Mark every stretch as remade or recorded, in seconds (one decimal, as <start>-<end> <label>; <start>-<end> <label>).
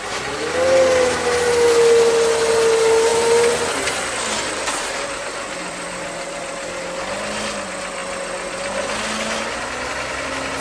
0.0-3.1 recorded; 3.1-6.6 remade; 6.6-10.6 recorded